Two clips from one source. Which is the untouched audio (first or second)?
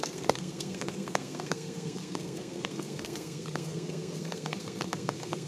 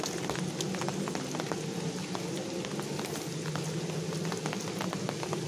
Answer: second